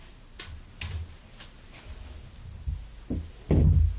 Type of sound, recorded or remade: recorded